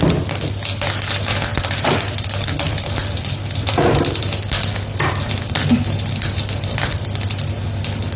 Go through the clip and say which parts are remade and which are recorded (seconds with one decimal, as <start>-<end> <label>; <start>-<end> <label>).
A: 0.0-1.5 recorded; 1.5-4.0 remade; 4.0-4.7 recorded; 4.7-5.7 remade; 5.7-8.2 recorded